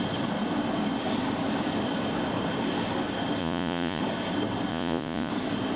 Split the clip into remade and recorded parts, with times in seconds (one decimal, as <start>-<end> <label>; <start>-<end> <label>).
0.0-3.4 recorded; 3.4-4.0 remade; 4.0-4.7 recorded; 4.7-5.3 remade; 5.3-5.8 recorded